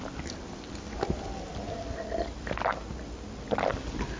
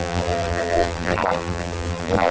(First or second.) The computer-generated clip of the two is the second